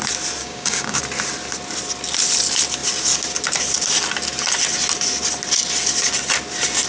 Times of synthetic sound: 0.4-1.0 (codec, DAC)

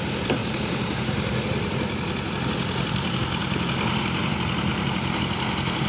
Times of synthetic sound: 0.4-2.3 (vocoder, BigVGAN v2); 4.7-5.2

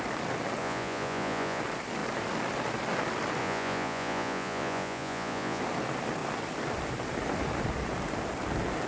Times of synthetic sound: 0.6-1.6 (vocoder, Vocos); 3.4-5.6

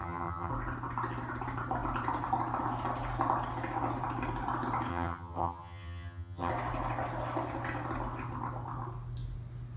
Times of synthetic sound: 0.0-0.5 (vocoder, HiFi-GAN); 4.9-6.5

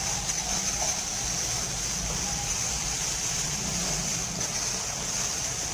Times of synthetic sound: none

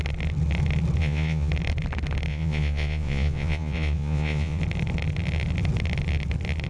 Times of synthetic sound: 1.0-1.5 (vocoder, Vocos); 2.3-4.6